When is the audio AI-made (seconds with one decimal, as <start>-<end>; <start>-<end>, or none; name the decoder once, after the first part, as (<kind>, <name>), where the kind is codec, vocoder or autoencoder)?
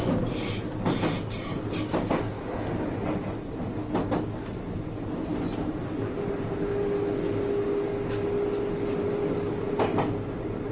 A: none